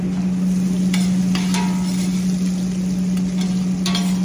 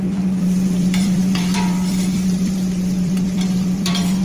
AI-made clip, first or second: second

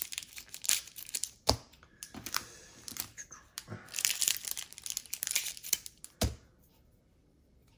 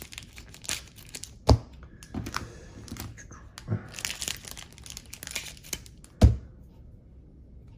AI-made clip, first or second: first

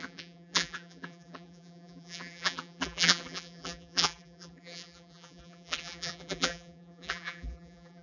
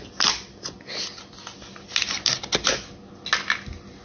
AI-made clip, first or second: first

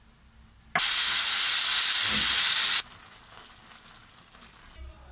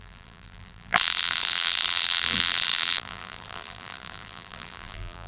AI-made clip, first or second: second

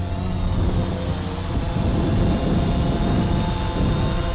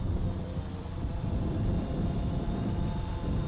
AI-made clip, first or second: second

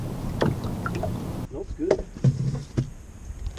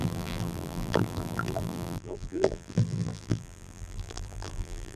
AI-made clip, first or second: second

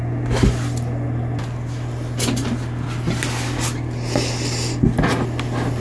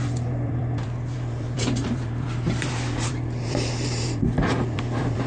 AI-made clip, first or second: second